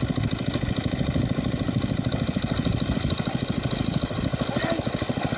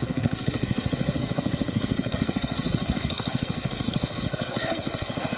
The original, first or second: first